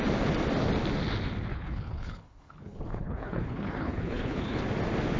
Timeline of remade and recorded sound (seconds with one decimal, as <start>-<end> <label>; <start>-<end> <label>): 0.0-1.5 recorded; 1.5-4.6 remade; 4.6-5.2 recorded